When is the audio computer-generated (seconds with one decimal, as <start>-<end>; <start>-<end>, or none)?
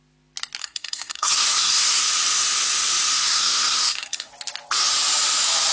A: 0.6-2.0; 3.2-4.3